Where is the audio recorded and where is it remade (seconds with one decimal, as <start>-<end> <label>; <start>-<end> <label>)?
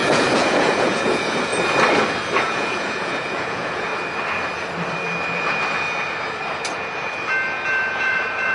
0.0-1.5 remade; 1.5-2.4 recorded; 2.4-3.9 remade; 3.9-7.9 recorded; 7.9-8.5 remade